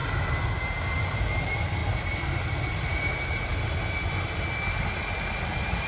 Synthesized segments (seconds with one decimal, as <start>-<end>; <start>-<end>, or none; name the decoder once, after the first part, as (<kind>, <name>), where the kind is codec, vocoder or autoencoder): 1.0-3.5 (vocoder, BigVGAN v2); 5.0-5.9